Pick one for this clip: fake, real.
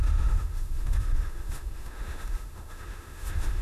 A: fake